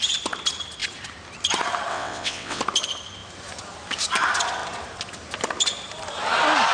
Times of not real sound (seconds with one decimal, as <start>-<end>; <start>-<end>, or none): 1.9-2.6